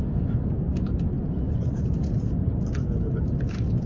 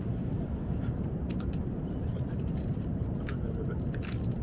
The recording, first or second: first